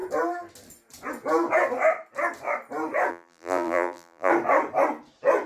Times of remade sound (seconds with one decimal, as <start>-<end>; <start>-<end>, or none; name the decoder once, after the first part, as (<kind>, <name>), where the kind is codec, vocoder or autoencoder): 3.1-4.3 (vocoder, BigVGAN v2)